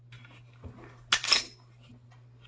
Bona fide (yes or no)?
yes